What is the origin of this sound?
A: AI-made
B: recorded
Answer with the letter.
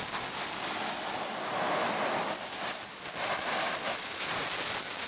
B